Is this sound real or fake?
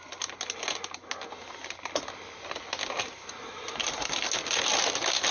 real